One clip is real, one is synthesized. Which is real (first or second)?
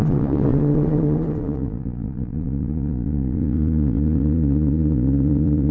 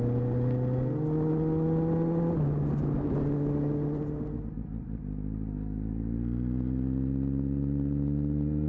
second